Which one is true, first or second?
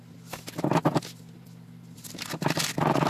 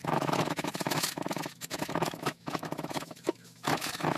first